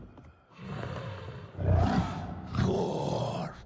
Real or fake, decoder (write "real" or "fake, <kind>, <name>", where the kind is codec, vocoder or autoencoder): fake, vocoder, BigVGAN v2